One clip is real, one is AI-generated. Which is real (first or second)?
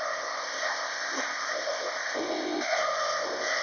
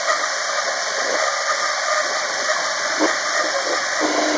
second